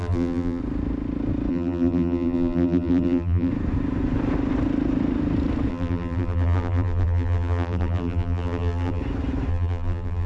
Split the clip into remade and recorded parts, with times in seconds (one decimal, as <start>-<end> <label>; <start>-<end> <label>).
0.0-0.6 remade; 0.6-1.5 recorded; 1.5-3.5 remade; 3.5-5.7 recorded; 5.7-9.0 remade; 9.0-9.5 recorded; 9.5-10.3 remade